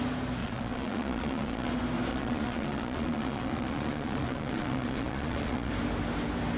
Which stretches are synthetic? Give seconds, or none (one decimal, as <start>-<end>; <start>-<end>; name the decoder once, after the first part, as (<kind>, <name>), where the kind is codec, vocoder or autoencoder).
0.4-1.7 (vocoder, Vocos); 2.1-5.7